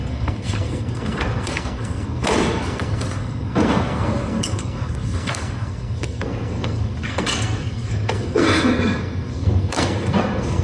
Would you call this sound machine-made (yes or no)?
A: yes